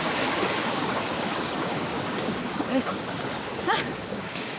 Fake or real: fake